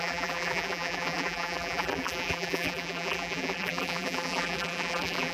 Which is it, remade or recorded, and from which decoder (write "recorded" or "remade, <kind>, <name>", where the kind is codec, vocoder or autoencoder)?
remade, vocoder, BigVGAN v2